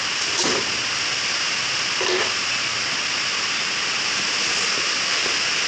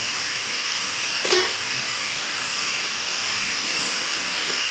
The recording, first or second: first